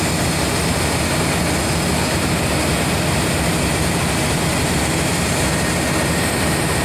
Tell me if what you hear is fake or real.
real